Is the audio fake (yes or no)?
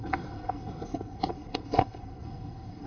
yes